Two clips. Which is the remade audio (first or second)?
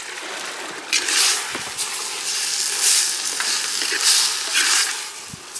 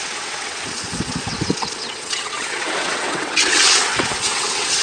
second